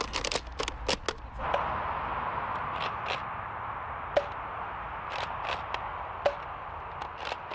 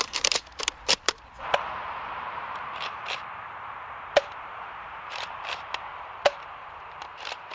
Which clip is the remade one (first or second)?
second